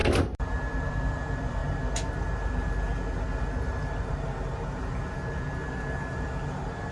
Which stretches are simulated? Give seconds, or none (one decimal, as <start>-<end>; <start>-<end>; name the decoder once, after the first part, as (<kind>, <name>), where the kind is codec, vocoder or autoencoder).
0.9-1.6 (vocoder, BigVGAN v2); 5.7-6.9